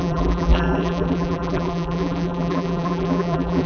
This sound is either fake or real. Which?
fake